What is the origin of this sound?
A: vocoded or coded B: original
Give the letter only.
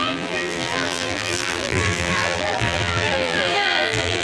A